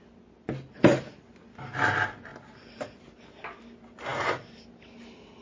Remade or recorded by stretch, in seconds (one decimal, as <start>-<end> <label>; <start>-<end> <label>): 0.0-5.4 recorded